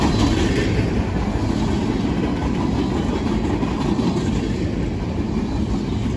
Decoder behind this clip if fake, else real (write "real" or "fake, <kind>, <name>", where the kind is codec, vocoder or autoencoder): real